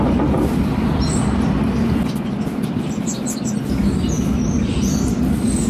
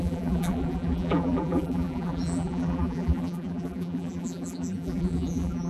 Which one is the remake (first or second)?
second